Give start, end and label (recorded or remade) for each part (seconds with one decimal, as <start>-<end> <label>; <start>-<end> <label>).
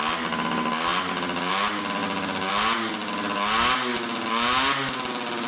0.0-5.5 recorded